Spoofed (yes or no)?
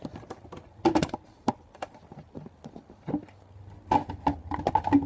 no